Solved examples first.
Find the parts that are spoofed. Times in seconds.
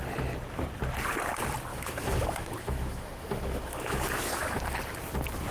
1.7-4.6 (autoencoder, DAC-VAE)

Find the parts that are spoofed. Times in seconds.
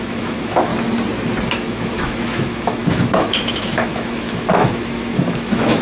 0.0-0.7 (autoencoder, DAC-VAE); 1.5-5.8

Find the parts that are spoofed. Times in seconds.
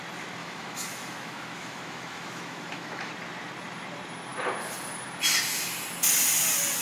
0.4-3.1 (autoencoder, DAC-VAE)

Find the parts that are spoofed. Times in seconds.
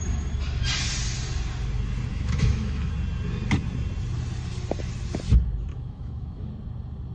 2.1-2.9 (autoencoder, DAC-VAE); 5.7-6.5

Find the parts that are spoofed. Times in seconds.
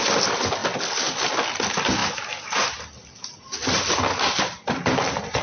none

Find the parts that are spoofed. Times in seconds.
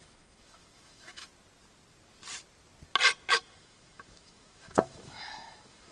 0.0-1.3 (autoencoder, DAC-VAE); 3.3-5.9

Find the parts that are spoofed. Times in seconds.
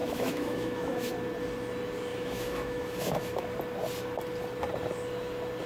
0.0-1.1 (autoencoder, DAC-VAE); 2.1-3.4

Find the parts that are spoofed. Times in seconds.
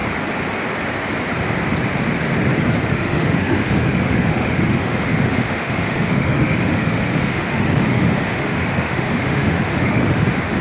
2.9-10.6 (autoencoder, DAC-VAE)